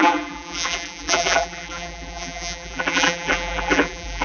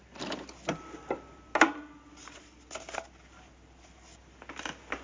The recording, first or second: second